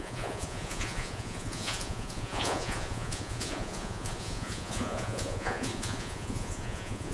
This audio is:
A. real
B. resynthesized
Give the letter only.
B